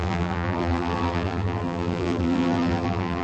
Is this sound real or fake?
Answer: fake